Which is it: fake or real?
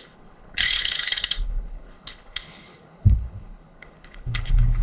fake